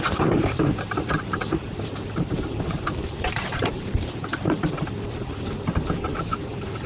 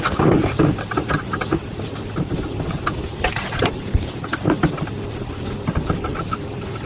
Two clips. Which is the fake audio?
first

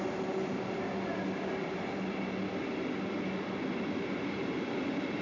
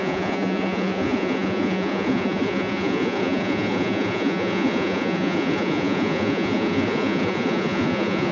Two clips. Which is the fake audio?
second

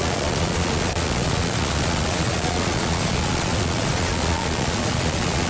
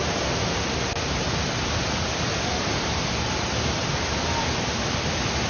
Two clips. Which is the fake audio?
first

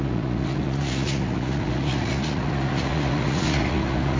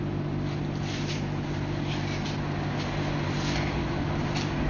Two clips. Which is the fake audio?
first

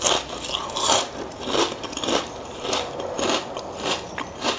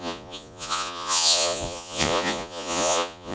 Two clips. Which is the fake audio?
second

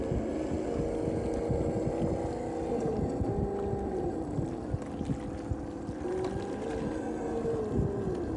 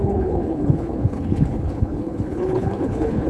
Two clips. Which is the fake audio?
second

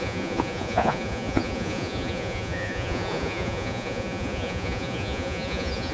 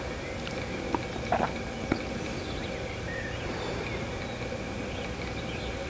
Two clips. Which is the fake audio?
first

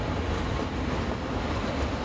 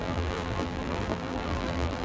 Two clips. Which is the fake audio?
second